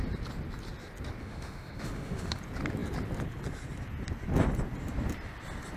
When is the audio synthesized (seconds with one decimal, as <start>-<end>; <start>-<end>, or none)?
1.2-2.4